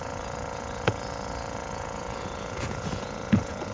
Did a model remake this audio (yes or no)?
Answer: yes